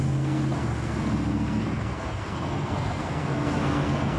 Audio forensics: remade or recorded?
remade